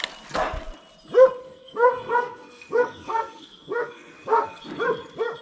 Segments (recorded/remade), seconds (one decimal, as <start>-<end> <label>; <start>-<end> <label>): 0.0-1.4 recorded; 1.4-4.6 remade; 4.6-5.4 recorded